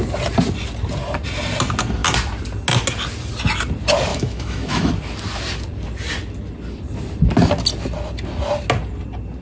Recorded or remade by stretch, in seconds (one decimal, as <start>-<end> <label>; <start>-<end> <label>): 0.0-4.1 recorded; 4.1-4.9 remade; 4.9-9.4 recorded